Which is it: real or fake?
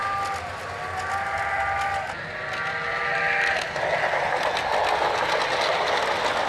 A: real